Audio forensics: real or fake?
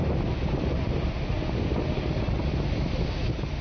real